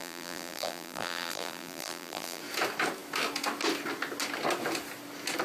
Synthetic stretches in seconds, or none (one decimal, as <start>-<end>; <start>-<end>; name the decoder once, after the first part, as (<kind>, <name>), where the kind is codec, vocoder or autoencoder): 0.0-2.4 (vocoder, BigVGAN v2)